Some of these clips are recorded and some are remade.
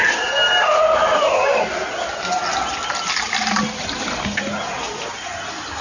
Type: recorded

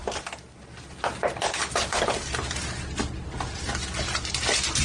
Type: recorded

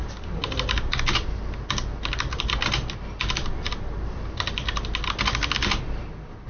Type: recorded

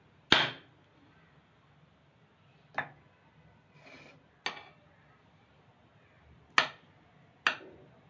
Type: recorded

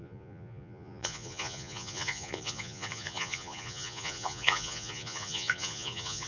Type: remade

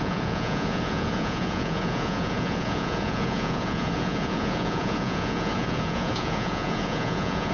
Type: remade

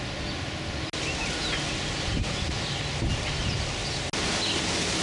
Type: recorded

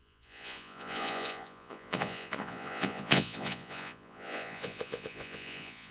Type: remade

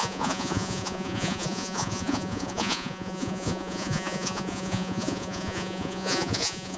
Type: remade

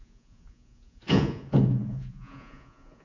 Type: remade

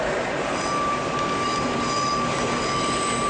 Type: recorded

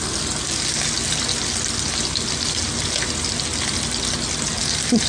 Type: recorded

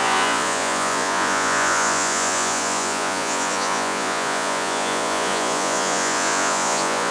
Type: remade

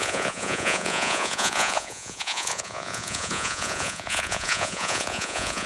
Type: remade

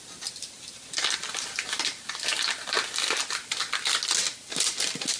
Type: recorded